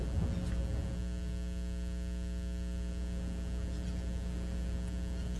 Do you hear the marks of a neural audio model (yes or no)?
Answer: no